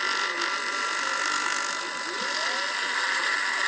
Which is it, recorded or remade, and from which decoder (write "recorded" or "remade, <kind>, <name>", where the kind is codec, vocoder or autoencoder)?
recorded